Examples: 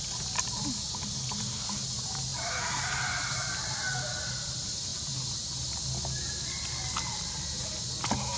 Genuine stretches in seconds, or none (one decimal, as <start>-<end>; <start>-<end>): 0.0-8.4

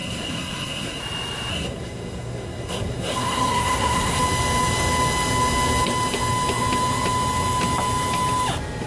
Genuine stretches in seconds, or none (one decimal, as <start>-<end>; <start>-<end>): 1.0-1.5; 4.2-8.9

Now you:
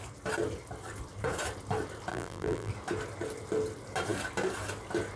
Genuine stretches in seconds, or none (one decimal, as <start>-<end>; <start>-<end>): 0.0-2.1; 2.7-5.2

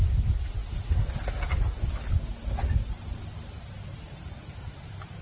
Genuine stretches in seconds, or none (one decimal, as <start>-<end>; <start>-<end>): 0.0-5.2

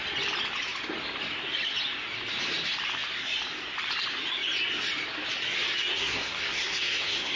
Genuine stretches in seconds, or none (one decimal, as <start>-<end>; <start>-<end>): 0.0-5.9

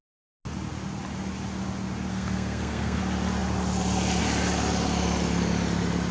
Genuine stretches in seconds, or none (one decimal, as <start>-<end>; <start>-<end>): 0.0-2.1; 3.0-6.1

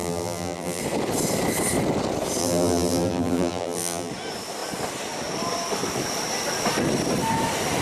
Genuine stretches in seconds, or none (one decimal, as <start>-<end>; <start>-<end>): 0.8-2.4; 4.1-7.8

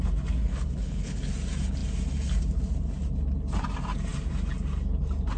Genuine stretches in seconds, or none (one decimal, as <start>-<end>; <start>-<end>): 0.0-0.4; 1.3-5.4